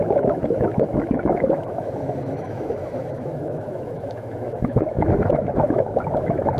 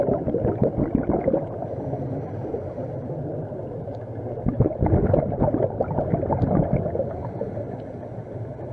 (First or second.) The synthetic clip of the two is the first